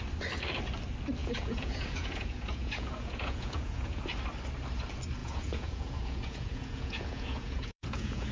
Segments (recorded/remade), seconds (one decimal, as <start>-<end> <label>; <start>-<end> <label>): 0.0-1.2 recorded; 1.2-4.0 remade; 4.0-5.2 recorded; 5.2-8.3 remade